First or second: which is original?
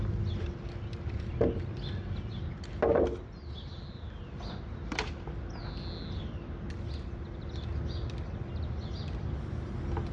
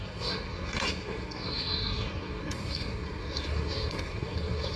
first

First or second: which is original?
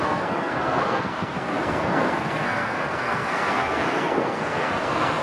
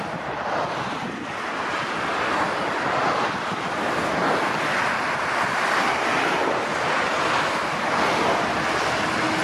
second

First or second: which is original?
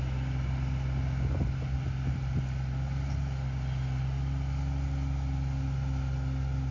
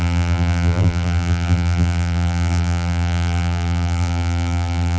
first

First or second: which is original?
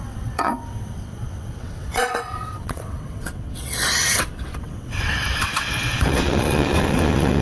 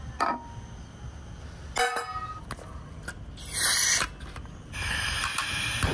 second